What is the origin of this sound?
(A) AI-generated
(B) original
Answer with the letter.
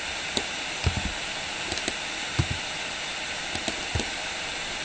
B